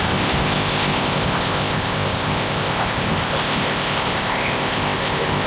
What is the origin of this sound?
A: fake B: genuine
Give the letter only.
A